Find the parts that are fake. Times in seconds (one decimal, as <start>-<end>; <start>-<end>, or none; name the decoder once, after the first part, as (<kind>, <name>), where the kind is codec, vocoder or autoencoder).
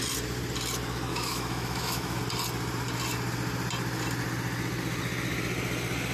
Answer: 1.1-2.2 (autoencoder, DAC-VAE)